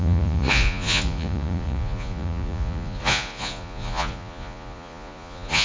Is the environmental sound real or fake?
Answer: fake